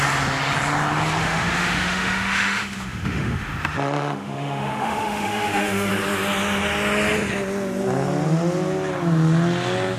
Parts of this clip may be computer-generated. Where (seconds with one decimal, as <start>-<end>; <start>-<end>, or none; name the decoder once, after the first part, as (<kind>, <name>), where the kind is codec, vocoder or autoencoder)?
1.2-5.9 (autoencoder, DAC-VAE)

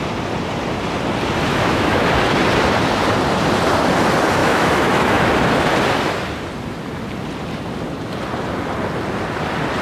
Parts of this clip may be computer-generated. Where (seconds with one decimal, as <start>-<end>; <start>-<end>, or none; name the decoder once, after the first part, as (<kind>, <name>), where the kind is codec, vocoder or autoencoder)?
1.5-2.1 (autoencoder, DAC-VAE); 4.4-5.3

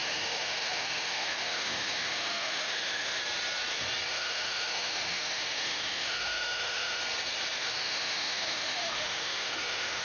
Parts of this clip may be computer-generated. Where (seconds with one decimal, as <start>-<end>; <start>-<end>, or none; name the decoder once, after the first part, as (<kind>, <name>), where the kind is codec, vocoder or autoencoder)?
0.0-3.2 (autoencoder, DAC-VAE); 4.1-7.0; 7.6-10.0

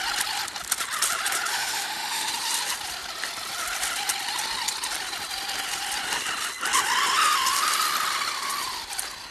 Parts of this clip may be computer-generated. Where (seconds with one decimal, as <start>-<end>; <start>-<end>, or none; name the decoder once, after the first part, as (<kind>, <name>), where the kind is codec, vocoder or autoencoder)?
1.5-2.3 (autoencoder, DAC-VAE)

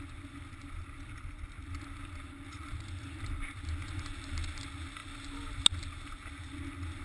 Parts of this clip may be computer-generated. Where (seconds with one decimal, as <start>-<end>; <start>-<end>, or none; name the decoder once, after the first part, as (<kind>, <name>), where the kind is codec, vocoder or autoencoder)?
none

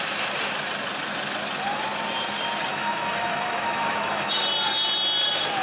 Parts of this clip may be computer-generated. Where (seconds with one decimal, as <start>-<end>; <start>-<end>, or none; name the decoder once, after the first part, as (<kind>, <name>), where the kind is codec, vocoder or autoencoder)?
2.7-4.4 (autoencoder, DAC-VAE)

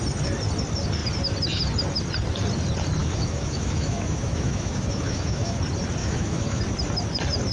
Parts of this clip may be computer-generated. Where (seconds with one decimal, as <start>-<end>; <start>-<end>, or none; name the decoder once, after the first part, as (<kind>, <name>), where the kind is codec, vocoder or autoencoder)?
3.0-5.6 (autoencoder, DAC-VAE); 6.0-6.6